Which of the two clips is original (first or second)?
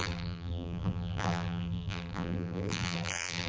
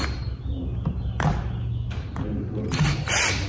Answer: second